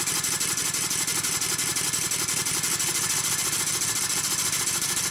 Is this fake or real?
real